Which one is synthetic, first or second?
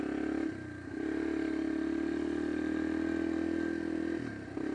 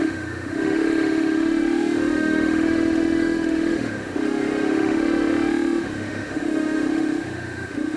second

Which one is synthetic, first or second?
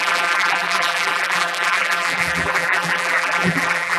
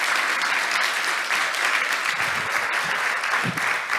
first